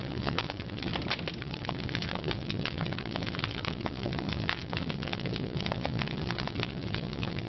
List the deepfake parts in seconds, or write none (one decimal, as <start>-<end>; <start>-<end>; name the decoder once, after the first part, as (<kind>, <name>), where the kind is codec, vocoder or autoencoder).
0.0-0.9 (vocoder, WaveNeXt); 1.4-7.5